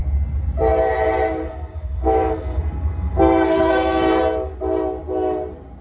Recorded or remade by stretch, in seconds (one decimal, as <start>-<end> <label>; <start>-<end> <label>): 0.0-1.4 recorded; 1.4-4.2 remade; 4.2-5.8 recorded